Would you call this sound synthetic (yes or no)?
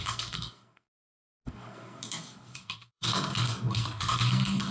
yes